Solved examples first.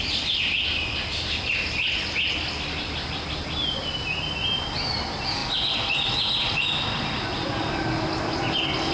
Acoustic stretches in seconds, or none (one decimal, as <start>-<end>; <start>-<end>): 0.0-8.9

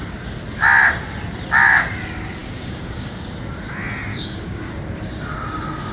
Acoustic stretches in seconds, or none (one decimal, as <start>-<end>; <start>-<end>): 0.0-2.4; 3.2-4.1; 4.7-5.9

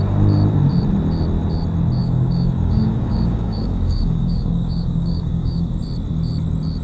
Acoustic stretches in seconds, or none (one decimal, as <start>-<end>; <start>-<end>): 0.0-2.0; 5.8-6.8

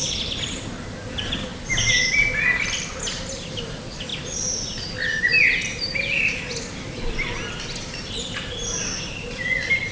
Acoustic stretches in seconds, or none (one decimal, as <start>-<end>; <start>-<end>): 0.0-9.9

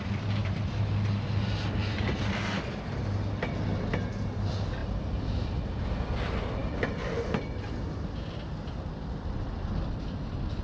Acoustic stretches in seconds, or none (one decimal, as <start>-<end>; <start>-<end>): 0.0-10.6

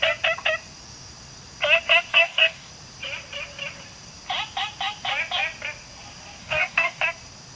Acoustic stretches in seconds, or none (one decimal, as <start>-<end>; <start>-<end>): 0.0-2.1; 2.7-6.4; 7.0-7.6